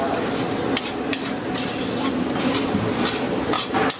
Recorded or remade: recorded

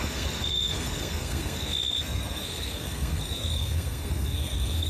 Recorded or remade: remade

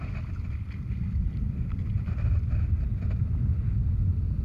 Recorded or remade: recorded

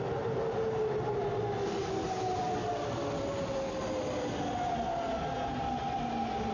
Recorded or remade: recorded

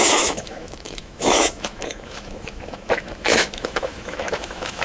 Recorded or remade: remade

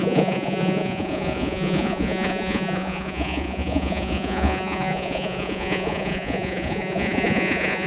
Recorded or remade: remade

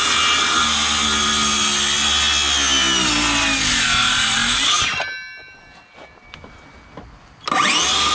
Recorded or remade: recorded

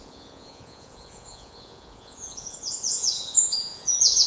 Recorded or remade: remade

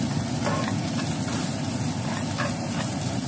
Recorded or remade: recorded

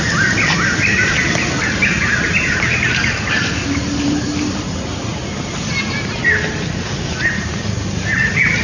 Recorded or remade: recorded